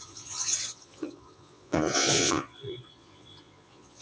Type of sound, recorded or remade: remade